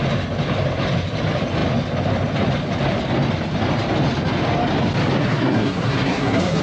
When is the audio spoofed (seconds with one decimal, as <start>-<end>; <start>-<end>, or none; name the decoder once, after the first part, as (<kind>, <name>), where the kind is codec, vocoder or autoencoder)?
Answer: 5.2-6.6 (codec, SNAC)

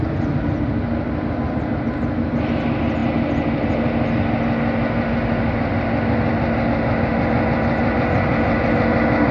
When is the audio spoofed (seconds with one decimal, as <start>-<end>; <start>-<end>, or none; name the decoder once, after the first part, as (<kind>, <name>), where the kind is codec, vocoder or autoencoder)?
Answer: none

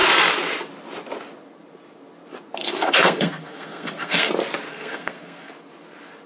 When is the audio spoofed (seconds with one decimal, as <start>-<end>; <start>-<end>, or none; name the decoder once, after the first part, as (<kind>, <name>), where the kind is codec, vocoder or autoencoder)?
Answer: 2.6-4.3 (codec, SNAC); 4.7-5.5

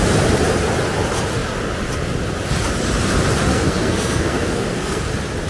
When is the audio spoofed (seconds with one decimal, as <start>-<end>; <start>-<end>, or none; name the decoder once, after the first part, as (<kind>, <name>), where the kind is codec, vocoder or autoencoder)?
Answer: 3.5-5.1 (codec, SNAC)

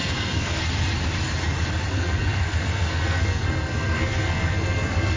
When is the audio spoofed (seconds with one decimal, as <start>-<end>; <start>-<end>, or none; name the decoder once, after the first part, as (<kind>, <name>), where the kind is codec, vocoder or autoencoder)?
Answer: 0.0-0.6 (codec, SNAC); 1.9-5.2